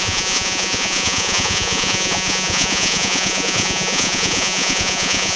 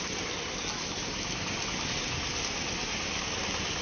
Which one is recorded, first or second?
second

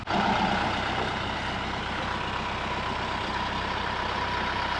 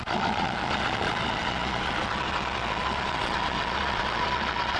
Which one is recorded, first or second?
first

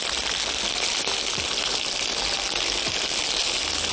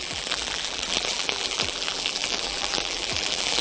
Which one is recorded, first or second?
first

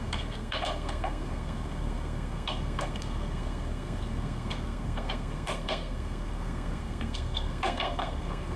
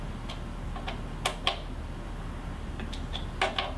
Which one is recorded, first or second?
second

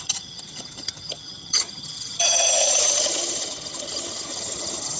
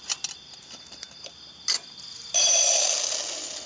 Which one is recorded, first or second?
second